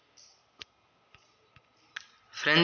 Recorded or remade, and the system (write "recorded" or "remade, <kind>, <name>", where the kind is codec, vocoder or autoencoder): recorded